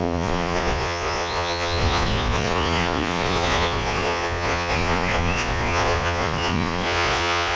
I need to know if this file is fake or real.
fake